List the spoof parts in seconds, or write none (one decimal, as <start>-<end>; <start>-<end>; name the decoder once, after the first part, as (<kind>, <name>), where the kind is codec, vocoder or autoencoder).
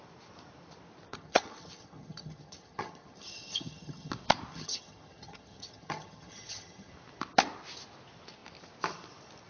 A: 1.1-4.1 (vocoder, HiFi-GAN); 4.5-6.9